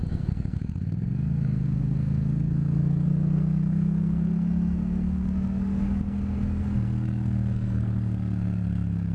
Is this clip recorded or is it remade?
remade